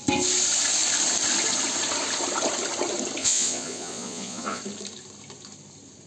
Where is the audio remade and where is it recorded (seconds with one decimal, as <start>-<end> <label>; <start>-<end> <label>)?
0.0-3.2 recorded; 3.2-4.6 remade; 4.6-6.1 recorded